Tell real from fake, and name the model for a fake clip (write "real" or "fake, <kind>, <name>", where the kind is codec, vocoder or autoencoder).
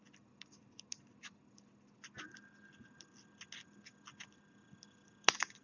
real